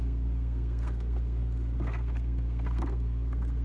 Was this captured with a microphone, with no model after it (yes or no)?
no